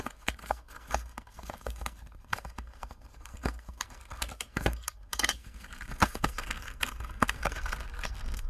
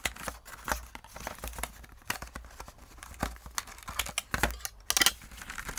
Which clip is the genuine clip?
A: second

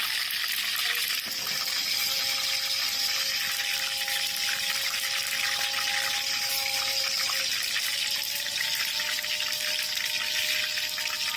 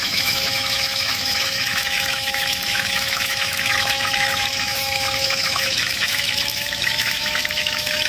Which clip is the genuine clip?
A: first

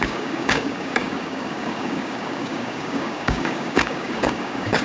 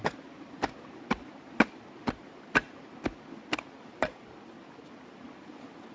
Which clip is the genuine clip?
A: second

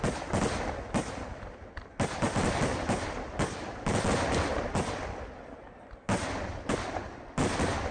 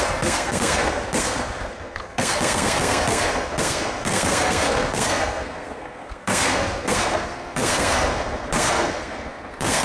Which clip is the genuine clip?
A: first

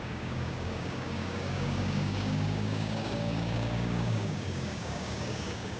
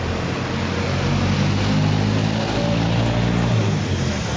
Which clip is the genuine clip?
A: second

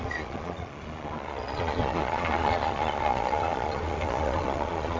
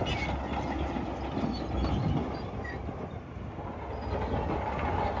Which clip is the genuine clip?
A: second